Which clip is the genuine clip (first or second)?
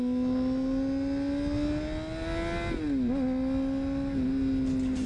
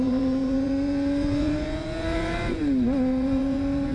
first